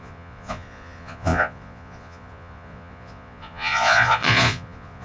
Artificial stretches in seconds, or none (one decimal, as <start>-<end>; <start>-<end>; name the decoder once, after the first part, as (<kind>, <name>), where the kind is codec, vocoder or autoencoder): 0.0-5.0 (vocoder, Vocos)